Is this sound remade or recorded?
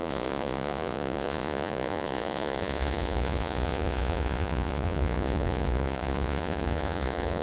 remade